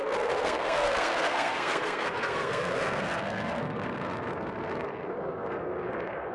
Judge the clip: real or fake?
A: fake